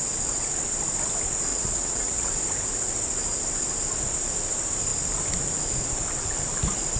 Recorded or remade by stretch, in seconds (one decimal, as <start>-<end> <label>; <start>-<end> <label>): 0.0-1.5 recorded; 1.5-2.3 remade; 2.3-7.0 recorded

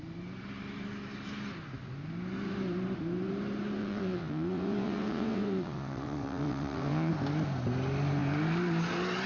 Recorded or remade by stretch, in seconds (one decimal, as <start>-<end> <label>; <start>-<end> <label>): 0.0-3.8 recorded; 3.8-7.1 remade; 7.1-9.3 recorded

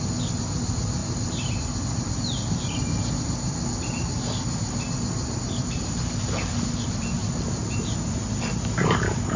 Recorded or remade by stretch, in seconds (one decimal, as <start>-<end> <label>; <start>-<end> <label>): 0.0-9.4 recorded

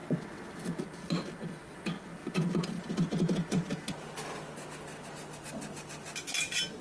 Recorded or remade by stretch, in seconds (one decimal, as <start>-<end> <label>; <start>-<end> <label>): 0.0-0.8 remade; 0.8-6.8 recorded

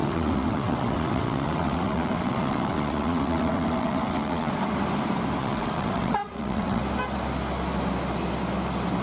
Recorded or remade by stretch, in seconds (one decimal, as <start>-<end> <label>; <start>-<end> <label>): 0.0-4.5 remade; 4.5-5.4 recorded; 5.4-6.8 remade; 6.8-9.0 recorded

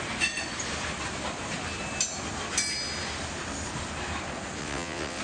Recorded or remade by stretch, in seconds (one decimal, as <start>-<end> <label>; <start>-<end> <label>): 0.0-4.6 recorded; 4.6-5.2 remade